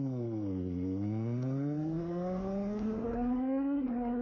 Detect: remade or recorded remade